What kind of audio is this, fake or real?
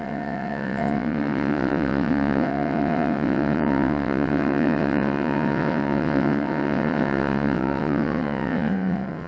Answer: fake